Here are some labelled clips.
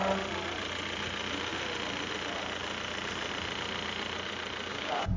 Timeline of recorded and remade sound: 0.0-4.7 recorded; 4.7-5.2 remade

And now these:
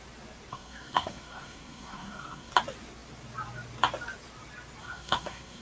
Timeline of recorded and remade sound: 0.0-0.5 recorded; 0.5-2.5 remade; 2.5-4.8 recorded; 4.8-5.6 remade

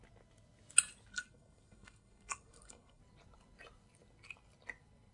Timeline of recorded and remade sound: 0.0-1.1 recorded; 1.1-3.0 remade; 3.0-5.1 recorded

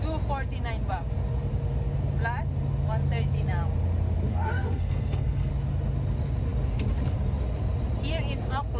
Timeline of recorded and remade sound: 0.0-4.3 recorded; 4.3-5.5 remade; 5.5-8.8 recorded